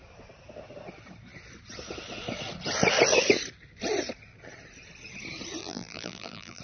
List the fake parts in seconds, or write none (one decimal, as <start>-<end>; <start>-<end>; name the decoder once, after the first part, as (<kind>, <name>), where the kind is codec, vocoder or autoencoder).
5.6-6.6 (vocoder, BigVGAN v2)